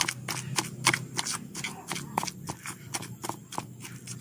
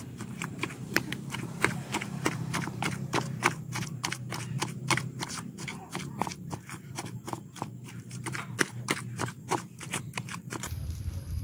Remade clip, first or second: second